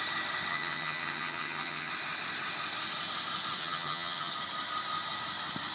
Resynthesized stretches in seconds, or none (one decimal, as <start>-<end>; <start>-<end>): 0.5-1.9; 3.6-4.3